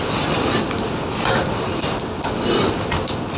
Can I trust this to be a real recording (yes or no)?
yes